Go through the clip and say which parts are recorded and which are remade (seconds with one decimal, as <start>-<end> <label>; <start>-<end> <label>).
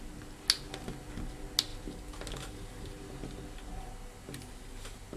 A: 0.0-5.2 recorded